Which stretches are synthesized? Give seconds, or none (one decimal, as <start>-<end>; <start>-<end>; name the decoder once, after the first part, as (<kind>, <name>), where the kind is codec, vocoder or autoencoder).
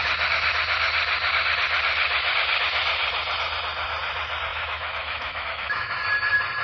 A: 4.5-5.9 (autoencoder, DAC-VAE)